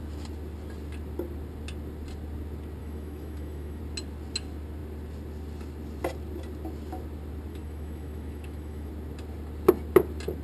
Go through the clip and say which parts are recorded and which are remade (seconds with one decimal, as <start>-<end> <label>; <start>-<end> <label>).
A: 0.0-2.8 recorded; 2.8-3.8 remade; 3.8-7.5 recorded; 7.5-8.9 remade; 8.9-10.4 recorded